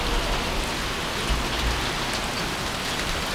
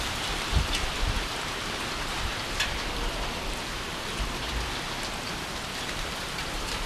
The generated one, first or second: second